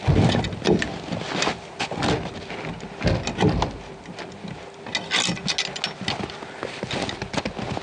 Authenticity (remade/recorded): recorded